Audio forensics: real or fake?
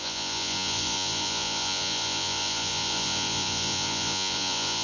fake